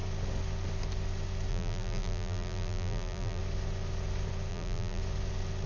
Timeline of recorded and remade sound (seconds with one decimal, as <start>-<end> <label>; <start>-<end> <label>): 0.0-1.5 recorded; 1.5-3.4 remade; 3.4-4.5 recorded; 4.5-5.0 remade; 5.0-5.7 recorded